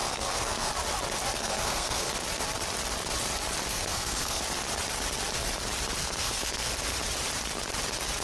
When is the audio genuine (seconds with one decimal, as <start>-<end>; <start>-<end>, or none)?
0.7-1.4; 2.1-3.7; 4.4-6.0; 6.7-8.2